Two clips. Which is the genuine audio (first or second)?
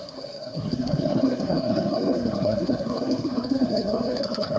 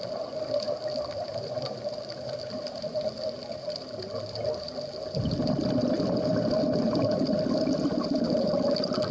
second